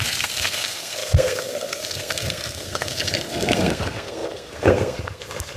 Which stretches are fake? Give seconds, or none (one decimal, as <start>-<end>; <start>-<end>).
0.0-5.6